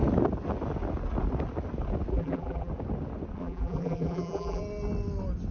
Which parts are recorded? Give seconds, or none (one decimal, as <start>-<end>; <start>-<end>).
0.0-2.1; 2.7-3.4; 4.6-5.5